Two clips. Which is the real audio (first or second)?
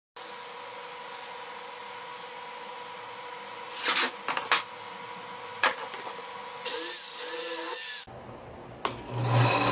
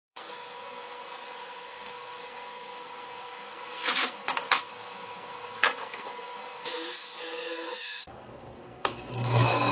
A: first